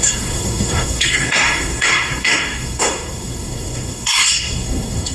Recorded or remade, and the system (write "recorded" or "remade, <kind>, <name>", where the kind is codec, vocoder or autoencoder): remade, codec, SNAC